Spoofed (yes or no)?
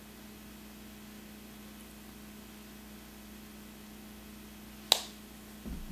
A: no